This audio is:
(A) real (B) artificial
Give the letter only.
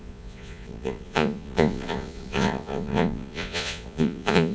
B